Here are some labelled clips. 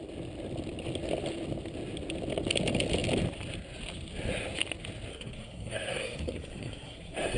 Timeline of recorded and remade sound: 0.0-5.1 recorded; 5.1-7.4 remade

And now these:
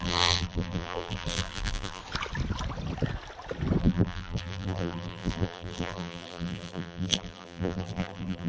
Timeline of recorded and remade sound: 0.0-2.0 remade; 2.0-3.8 recorded; 3.8-8.5 remade